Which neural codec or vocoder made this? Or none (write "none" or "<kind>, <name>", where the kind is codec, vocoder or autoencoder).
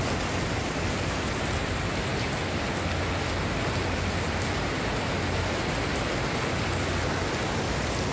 none